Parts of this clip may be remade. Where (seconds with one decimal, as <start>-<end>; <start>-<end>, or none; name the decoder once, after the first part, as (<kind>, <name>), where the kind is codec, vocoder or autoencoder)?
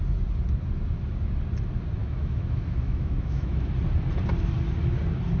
2.0-3.7 (autoencoder, DAC-VAE)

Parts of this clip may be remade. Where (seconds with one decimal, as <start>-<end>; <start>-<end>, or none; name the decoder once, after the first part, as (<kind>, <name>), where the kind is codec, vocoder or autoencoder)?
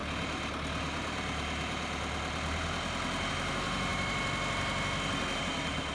none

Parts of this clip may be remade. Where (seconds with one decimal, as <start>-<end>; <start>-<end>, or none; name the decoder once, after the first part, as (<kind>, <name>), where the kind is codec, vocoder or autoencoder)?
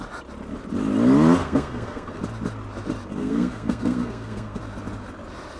1.4-2.2 (codec, SNAC); 3.2-4.6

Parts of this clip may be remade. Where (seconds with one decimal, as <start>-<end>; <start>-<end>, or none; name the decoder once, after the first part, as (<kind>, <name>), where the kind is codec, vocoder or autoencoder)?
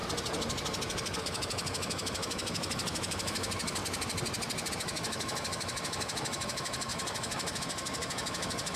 1.2-3.8 (autoencoder, DAC-VAE); 4.7-8.8